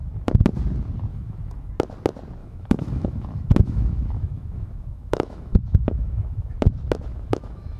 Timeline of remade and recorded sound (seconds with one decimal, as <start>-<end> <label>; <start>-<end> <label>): 0.0-1.1 recorded; 1.1-1.7 remade; 1.7-2.4 recorded; 2.4-6.5 remade; 6.5-7.1 recorded; 7.1-7.8 remade